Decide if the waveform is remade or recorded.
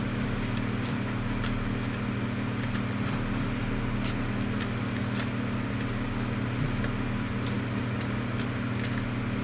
recorded